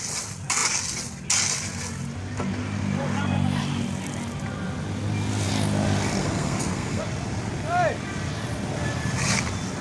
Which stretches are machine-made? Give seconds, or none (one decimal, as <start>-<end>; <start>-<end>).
6.2-7.0